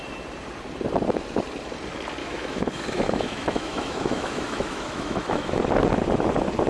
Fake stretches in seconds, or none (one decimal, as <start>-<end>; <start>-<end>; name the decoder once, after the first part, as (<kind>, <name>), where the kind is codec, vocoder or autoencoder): 2.2-5.6 (autoencoder, DAC-VAE)

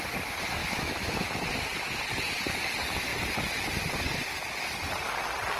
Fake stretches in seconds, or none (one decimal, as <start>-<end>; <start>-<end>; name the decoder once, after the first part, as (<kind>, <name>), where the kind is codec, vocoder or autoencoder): 0.6-1.3 (autoencoder, DAC-VAE)

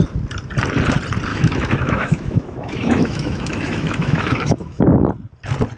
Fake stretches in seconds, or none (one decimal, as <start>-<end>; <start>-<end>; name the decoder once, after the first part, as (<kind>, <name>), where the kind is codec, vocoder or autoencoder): 1.3-4.8 (autoencoder, DAC-VAE)

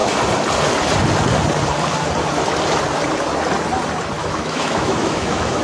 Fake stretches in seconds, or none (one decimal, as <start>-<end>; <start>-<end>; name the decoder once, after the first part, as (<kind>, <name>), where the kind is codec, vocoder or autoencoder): 4.2-5.6 (autoencoder, DAC-VAE)

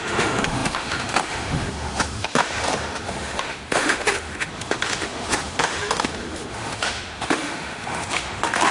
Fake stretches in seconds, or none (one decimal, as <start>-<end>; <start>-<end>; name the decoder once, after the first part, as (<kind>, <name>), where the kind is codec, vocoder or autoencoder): 0.0-8.7 (autoencoder, DAC-VAE)